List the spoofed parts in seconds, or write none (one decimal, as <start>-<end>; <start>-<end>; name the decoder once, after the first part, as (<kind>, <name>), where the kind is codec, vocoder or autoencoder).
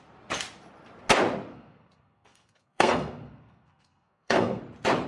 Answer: 1.5-4.6 (codec, SNAC)